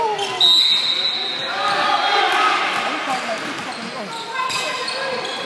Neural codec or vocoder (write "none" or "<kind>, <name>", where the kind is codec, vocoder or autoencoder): none